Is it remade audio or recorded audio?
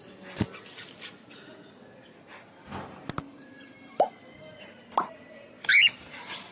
recorded